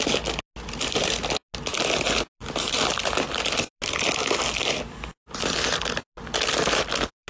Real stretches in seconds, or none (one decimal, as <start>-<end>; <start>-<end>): 0.0-7.3